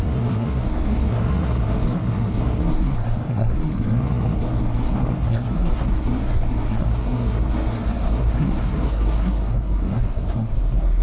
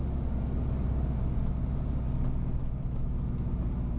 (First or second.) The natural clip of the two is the second